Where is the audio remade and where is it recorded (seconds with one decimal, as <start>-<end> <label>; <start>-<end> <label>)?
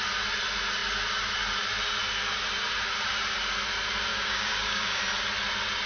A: 0.0-4.1 recorded; 4.1-5.0 remade; 5.0-5.9 recorded